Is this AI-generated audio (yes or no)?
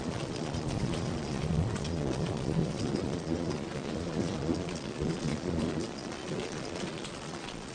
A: yes